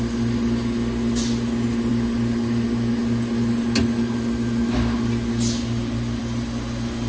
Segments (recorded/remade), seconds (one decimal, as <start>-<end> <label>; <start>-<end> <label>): 0.0-7.1 recorded